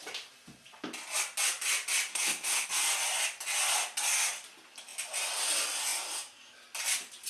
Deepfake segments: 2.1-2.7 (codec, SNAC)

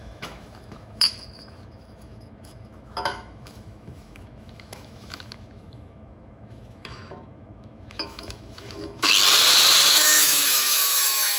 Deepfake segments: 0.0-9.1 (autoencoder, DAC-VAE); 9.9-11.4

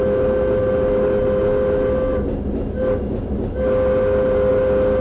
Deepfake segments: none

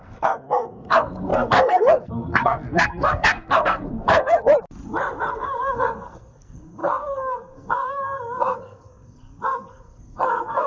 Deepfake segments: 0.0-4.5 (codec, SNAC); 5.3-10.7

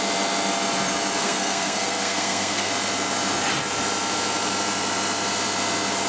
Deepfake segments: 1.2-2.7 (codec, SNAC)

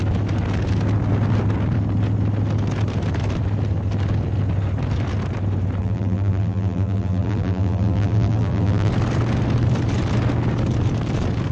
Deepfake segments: 5.8-8.9 (vocoder, BigVGAN v2)

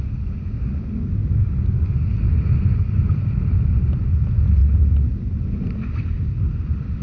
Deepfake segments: none

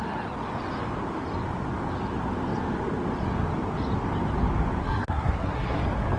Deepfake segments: 4.8-5.8 (codec, SNAC)